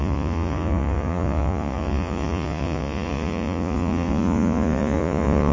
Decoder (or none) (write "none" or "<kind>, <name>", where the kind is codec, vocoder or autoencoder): vocoder, Vocos